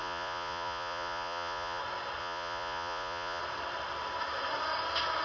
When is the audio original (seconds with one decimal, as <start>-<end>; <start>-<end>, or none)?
1.8-2.2; 3.4-5.2